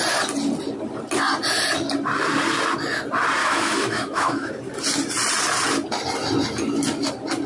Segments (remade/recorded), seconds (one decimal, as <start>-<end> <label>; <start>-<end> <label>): 0.0-3.4 recorded; 3.4-4.5 remade; 4.5-7.5 recorded